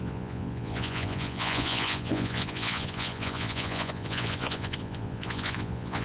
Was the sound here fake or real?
fake